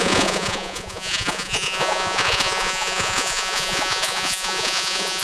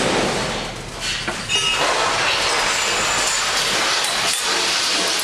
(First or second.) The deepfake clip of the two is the first